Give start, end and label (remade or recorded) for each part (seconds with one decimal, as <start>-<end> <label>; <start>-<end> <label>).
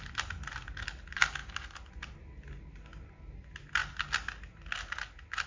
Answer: 0.0-5.5 recorded